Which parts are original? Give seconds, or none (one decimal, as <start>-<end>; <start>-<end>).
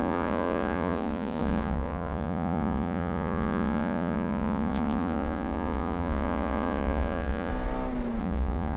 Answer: 7.5-8.2